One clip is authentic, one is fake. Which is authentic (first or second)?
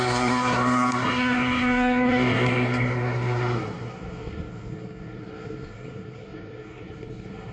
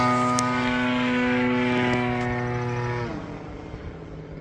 second